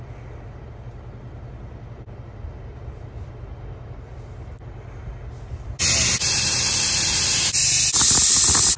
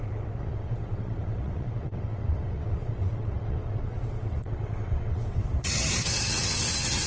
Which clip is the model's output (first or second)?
second